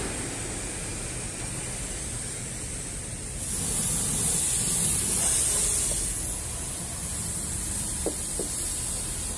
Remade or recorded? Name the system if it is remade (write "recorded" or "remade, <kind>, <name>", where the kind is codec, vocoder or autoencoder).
recorded